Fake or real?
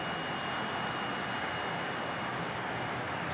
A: real